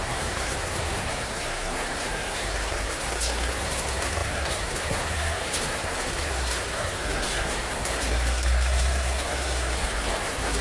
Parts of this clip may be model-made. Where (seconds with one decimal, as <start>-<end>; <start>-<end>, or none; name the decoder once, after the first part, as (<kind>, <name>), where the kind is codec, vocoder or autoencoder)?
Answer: 0.0-10.6 (codec, SNAC)